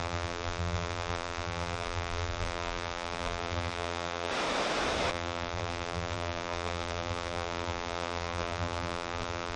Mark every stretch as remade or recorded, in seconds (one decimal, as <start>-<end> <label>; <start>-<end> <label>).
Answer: 0.0-4.3 remade; 4.3-5.1 recorded; 5.1-9.6 remade